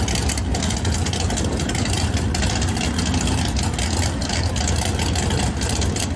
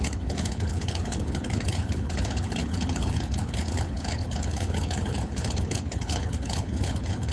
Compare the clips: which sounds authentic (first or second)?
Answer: first